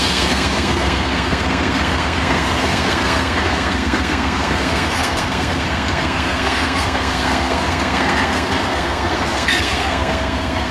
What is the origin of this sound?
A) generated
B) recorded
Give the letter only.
A